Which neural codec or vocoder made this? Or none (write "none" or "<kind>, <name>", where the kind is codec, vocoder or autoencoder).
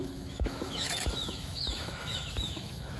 autoencoder, DAC-VAE